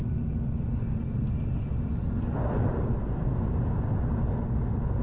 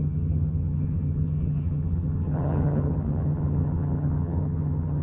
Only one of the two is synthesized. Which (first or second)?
second